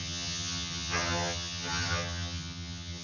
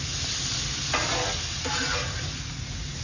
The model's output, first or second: first